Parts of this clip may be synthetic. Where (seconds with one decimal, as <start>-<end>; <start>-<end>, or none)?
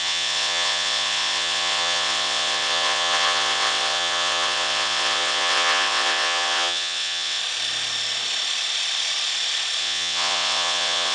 0.0-7.4; 9.8-11.1